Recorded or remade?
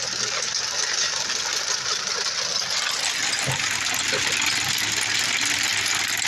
recorded